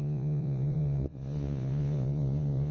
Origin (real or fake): fake